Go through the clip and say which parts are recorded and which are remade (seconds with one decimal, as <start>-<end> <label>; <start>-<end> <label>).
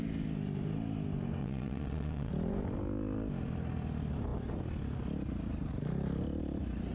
0.0-1.4 recorded; 1.4-2.3 remade; 2.3-6.9 recorded